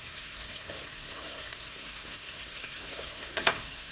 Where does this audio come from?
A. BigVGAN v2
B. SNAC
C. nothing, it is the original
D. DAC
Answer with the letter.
B